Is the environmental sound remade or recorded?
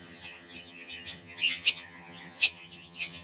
remade